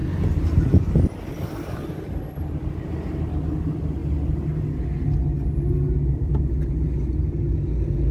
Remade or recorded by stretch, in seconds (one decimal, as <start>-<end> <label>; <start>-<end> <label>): 0.0-8.1 recorded

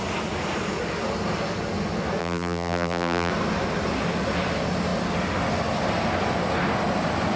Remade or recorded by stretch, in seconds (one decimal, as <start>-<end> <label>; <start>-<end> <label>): 0.0-2.2 recorded; 2.2-3.3 remade; 3.3-7.4 recorded

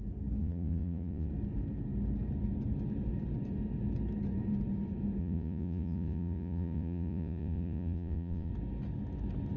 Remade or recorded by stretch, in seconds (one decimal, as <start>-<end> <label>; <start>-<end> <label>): 0.0-0.4 recorded; 0.4-1.3 remade; 1.3-5.2 recorded; 5.2-8.5 remade; 8.5-9.6 recorded

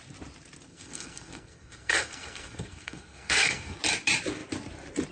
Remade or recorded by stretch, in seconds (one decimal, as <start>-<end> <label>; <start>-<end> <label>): 0.0-0.7 recorded; 0.7-3.8 remade; 3.8-5.1 recorded